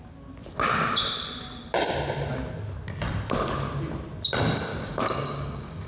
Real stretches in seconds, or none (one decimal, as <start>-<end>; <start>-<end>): 0.0-4.7